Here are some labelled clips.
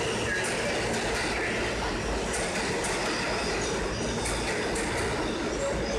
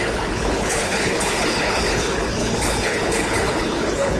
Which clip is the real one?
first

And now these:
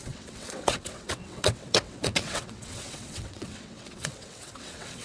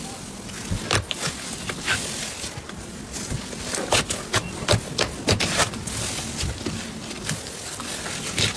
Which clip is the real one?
second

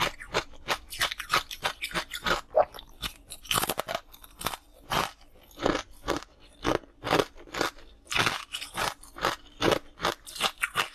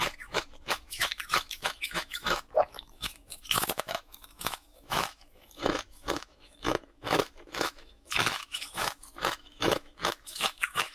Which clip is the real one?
first